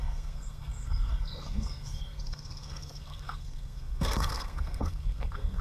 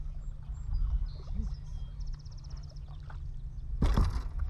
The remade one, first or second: first